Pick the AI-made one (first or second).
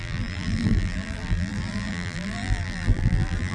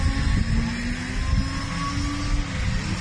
first